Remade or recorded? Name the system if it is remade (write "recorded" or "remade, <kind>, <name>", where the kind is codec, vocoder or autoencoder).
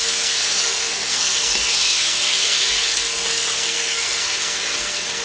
remade, codec, SNAC